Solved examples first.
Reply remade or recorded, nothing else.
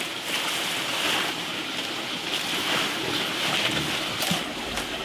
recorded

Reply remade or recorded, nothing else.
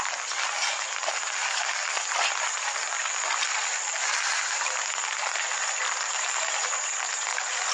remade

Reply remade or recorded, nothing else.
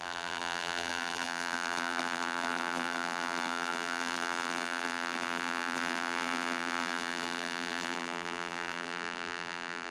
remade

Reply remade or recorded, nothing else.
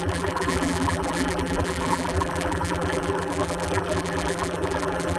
remade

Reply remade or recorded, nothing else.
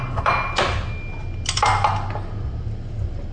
recorded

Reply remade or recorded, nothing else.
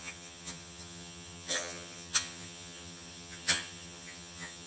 remade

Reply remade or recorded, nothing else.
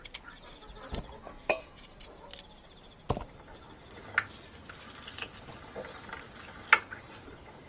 recorded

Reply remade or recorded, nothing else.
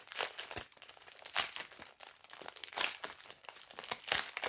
recorded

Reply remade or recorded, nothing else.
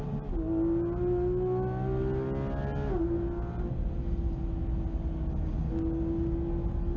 recorded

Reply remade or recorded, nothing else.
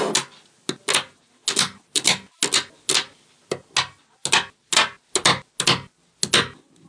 recorded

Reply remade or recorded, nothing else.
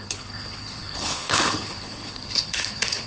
remade